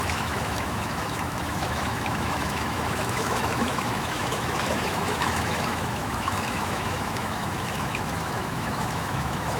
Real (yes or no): no